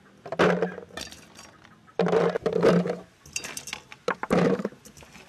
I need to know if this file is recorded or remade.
recorded